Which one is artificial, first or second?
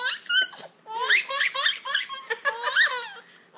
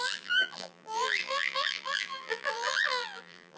second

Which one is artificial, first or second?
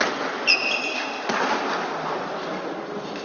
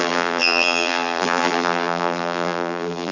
second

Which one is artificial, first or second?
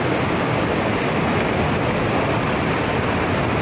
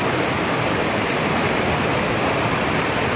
second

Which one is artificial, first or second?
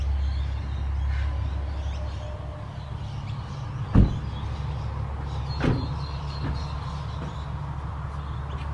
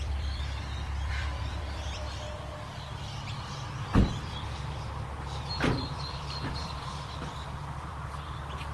second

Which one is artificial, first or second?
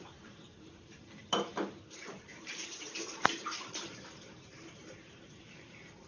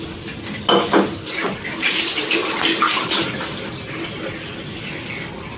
first